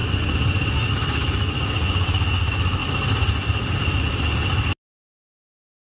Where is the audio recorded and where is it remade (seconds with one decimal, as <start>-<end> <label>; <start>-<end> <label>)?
0.0-0.9 recorded; 0.9-2.8 remade; 2.8-5.8 recorded